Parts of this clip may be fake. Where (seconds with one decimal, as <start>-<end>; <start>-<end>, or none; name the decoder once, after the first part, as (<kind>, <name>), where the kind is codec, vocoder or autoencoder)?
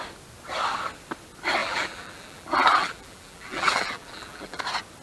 1.6-4.6 (vocoder, BigVGAN v2)